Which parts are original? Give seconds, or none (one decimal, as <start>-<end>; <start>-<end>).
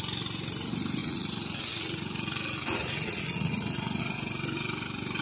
0.0-1.0; 4.0-5.2